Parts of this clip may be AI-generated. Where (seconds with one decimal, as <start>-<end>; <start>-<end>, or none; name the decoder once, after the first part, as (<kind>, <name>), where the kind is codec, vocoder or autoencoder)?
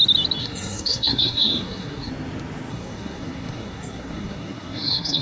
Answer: 0.4-2.1 (codec, SNAC); 2.7-5.2